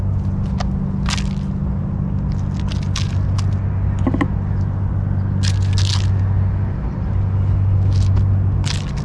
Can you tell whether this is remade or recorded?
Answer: recorded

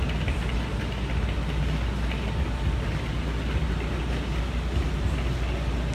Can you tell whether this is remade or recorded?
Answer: recorded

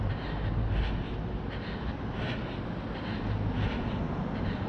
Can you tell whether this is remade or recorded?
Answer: recorded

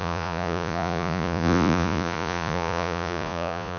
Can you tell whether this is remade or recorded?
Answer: remade